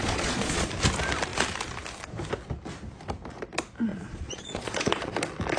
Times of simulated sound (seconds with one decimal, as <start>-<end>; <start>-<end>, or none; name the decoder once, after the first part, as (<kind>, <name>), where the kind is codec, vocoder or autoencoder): 0.0-0.7 (vocoder, Vocos); 3.9-5.1